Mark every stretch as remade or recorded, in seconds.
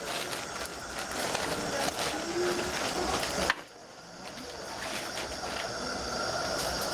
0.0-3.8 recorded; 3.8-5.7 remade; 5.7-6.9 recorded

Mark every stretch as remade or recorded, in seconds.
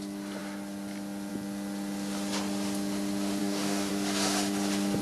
0.0-3.4 recorded; 3.4-3.9 remade; 3.9-5.0 recorded